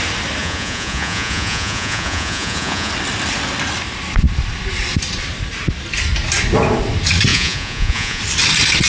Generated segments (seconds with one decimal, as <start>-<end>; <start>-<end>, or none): 0.4-2.9; 7.3-8.2